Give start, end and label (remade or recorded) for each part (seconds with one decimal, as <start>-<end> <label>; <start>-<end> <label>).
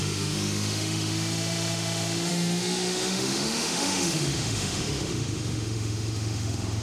0.0-6.8 remade